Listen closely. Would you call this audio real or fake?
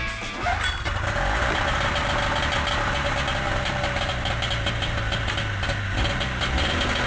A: real